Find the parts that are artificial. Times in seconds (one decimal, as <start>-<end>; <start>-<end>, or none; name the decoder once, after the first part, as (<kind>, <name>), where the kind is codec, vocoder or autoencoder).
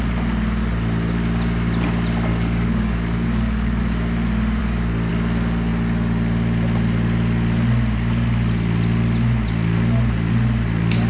2.3-3.8 (codec, DAC); 4.6-5.1